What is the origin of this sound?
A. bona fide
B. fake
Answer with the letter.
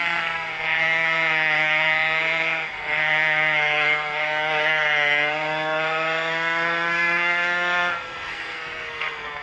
B